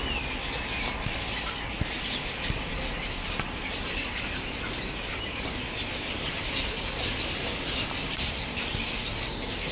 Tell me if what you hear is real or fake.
real